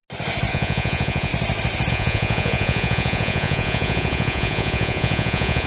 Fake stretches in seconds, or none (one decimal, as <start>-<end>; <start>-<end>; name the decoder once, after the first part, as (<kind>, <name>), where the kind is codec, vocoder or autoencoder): 0.5-1.3 (vocoder, Vocos); 1.9-5.7